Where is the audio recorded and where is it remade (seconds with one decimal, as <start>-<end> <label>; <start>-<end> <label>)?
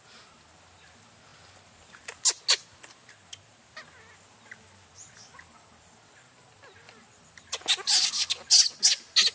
0.0-9.3 recorded